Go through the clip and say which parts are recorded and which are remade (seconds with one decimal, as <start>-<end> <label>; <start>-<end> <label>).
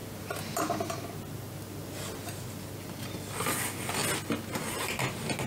0.0-5.5 recorded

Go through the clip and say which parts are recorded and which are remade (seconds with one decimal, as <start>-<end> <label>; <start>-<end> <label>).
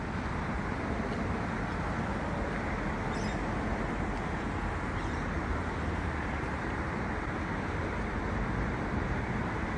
0.0-5.5 recorded; 5.5-8.2 remade; 8.2-9.8 recorded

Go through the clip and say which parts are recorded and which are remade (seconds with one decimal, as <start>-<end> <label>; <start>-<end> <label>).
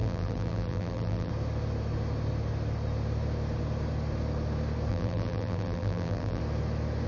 0.0-1.3 remade; 1.3-4.9 recorded; 4.9-6.4 remade; 6.4-7.1 recorded